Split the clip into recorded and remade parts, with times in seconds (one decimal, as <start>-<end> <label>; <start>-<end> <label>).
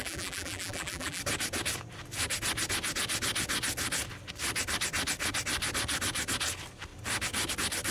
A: 0.0-1.2 remade; 1.2-7.9 recorded